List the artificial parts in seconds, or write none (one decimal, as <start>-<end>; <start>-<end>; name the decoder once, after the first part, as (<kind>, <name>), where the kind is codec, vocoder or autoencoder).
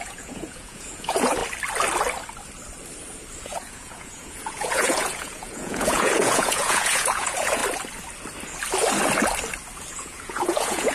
0.0-1.4 (vocoder, Vocos); 3.4-7.6; 9.9-10.9